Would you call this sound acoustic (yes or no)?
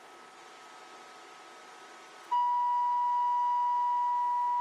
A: yes